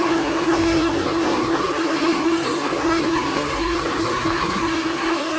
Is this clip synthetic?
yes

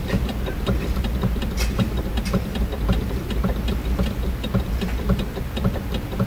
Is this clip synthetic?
no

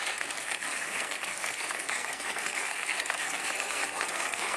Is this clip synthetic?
yes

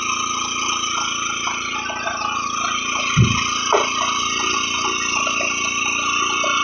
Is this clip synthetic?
no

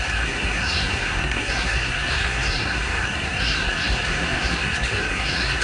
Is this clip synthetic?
yes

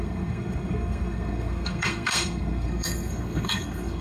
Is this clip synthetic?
yes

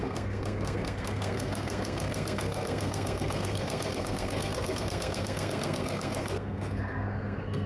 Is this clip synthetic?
yes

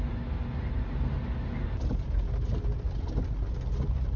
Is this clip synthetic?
no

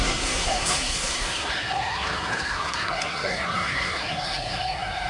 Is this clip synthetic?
yes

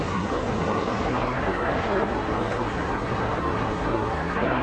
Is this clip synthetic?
yes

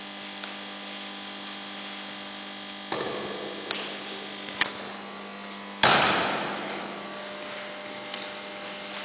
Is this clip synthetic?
no